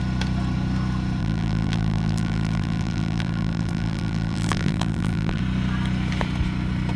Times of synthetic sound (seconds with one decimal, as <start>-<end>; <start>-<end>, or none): 1.2-5.4